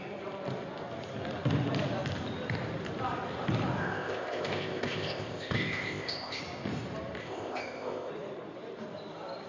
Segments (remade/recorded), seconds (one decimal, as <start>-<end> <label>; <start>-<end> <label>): 0.0-3.8 recorded; 3.8-6.4 remade; 6.4-7.2 recorded; 7.2-8.1 remade; 8.1-9.5 recorded